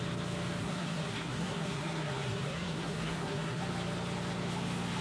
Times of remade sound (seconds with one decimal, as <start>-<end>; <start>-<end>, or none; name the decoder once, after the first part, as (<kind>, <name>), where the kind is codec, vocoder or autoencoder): 0.6-3.6 (codec, SNAC)